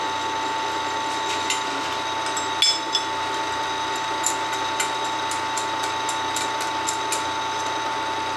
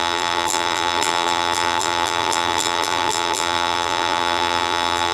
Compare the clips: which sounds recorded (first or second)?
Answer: first